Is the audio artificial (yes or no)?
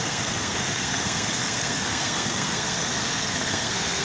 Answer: yes